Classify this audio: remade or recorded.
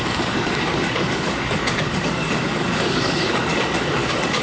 remade